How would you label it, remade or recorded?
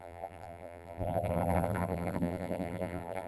remade